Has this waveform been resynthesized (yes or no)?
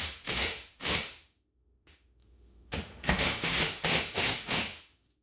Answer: yes